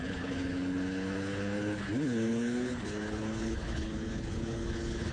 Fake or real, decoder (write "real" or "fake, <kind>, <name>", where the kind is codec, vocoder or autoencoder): fake, codec, HILCodec